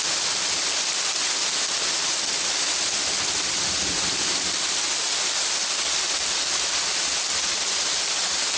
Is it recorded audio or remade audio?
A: recorded